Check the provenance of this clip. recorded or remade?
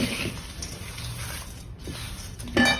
recorded